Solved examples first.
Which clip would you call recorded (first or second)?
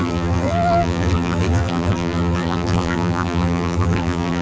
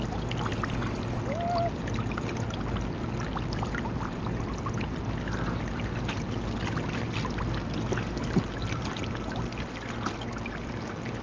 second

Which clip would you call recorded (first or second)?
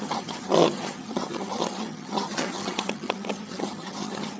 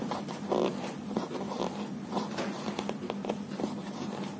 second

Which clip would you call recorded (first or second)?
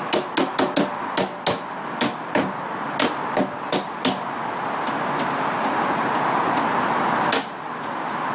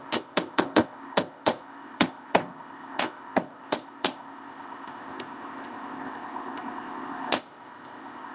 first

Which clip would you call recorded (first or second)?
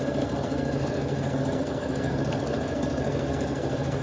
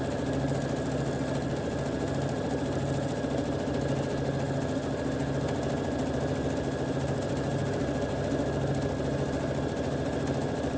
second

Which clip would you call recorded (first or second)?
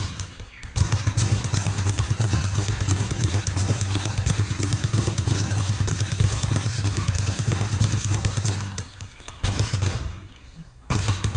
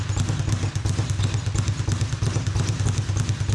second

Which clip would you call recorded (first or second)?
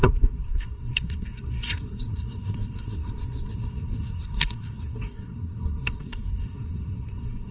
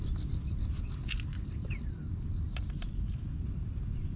second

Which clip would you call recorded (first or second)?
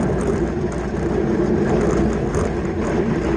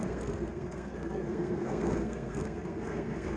first